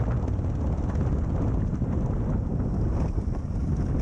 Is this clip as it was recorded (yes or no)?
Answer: yes